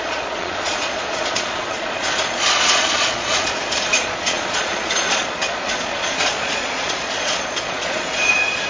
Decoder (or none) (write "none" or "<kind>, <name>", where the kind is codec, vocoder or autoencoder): vocoder, Vocos